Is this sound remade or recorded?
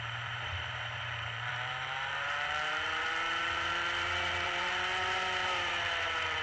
remade